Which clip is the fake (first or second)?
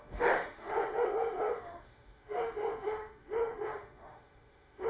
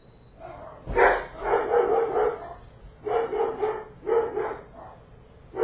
first